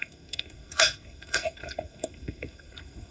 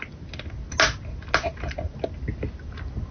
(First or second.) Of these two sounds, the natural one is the second